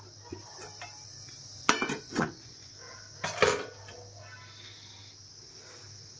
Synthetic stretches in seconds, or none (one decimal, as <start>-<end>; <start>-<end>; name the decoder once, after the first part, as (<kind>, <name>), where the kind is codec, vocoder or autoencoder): 1.6-2.7 (vocoder, Vocos)